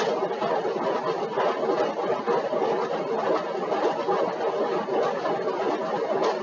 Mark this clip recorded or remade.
recorded